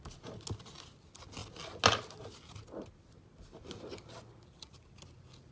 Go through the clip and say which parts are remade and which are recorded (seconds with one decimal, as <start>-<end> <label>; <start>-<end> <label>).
0.0-5.5 recorded